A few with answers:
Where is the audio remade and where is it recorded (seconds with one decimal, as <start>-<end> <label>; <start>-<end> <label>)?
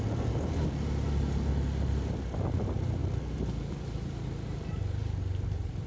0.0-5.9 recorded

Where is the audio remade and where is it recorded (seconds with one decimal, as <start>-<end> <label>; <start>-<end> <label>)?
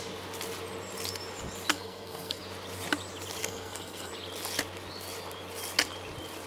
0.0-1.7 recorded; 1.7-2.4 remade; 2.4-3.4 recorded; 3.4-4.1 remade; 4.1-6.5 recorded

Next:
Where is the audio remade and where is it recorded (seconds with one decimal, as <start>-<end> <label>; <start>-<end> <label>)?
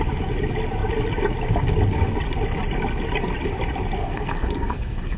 0.0-4.0 recorded; 4.0-5.2 remade